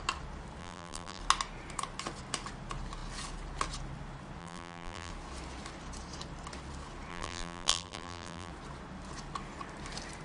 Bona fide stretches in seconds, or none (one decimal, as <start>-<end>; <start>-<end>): 0.0-0.6; 1.2-4.4; 5.1-7.1; 8.5-10.2